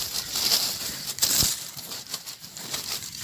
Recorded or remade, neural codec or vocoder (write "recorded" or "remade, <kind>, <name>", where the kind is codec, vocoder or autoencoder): remade, vocoder, BigVGAN v2